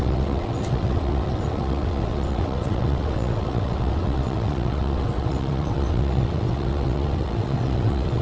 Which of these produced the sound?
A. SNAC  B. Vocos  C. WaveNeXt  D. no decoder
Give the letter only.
C